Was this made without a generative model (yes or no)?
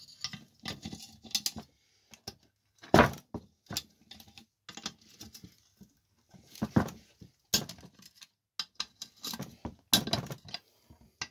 yes